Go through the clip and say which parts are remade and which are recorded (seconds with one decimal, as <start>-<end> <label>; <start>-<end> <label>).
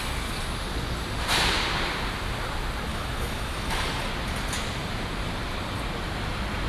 0.0-2.9 recorded; 2.9-4.1 remade; 4.1-6.7 recorded